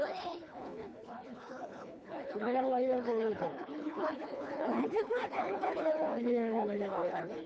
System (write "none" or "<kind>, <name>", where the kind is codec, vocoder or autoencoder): codec, HILCodec